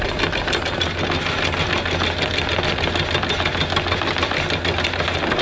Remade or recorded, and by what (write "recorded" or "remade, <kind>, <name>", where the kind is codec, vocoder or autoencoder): recorded